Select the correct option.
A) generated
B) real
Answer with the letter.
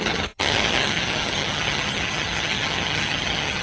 A